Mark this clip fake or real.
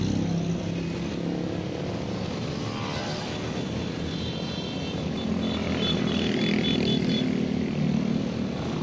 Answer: real